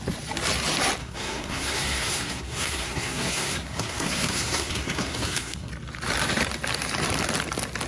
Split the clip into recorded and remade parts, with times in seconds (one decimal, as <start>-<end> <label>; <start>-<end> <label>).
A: 0.0-1.0 recorded; 1.0-5.7 remade; 5.7-7.9 recorded